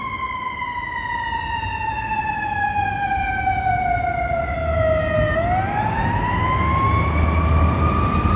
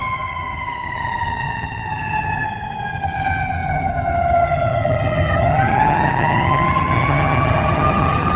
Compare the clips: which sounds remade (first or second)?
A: second